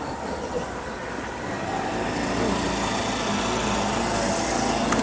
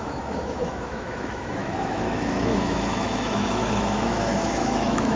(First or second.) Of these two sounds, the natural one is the first